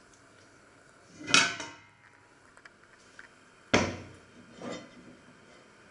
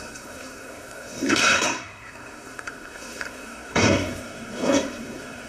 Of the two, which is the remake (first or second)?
second